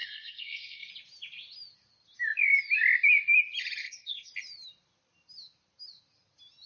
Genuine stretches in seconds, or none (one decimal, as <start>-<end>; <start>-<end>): 0.9-3.8; 4.3-6.7